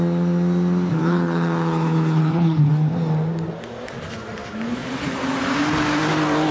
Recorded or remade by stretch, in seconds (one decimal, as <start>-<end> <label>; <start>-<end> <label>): 0.0-1.0 recorded; 1.0-2.7 remade; 2.7-6.5 recorded